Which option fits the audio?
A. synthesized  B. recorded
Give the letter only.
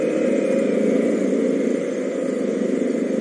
B